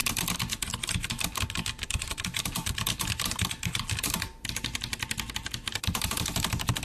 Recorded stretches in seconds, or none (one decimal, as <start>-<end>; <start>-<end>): 0.0-6.8